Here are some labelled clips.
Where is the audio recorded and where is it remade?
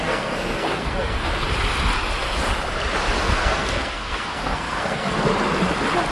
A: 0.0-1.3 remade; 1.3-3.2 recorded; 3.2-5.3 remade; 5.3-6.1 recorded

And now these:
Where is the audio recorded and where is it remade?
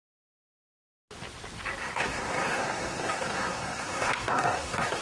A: 0.0-1.8 recorded; 1.8-5.0 remade